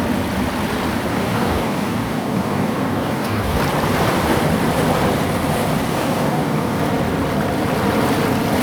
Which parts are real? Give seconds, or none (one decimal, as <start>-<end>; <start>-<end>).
0.0-1.1; 3.6-5.9; 6.8-8.6